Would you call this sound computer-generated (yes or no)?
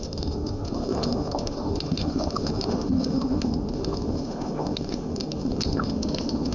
yes